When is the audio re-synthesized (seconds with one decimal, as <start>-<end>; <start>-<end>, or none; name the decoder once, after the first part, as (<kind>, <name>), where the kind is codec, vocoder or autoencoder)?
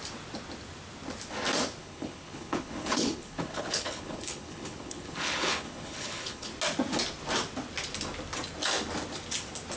1.8-6.5 (codec, HILCodec)